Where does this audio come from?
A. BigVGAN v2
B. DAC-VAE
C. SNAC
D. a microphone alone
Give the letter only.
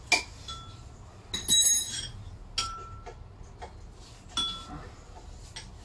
D